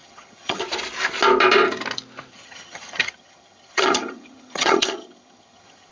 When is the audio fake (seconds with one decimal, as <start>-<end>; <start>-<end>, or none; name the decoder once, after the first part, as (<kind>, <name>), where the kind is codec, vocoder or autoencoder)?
0.0-0.6 (vocoder, HiFi-GAN); 2.3-5.9